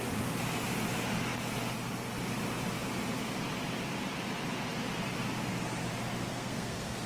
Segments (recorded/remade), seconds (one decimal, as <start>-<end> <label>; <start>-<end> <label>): 0.0-6.3 recorded; 6.3-7.1 remade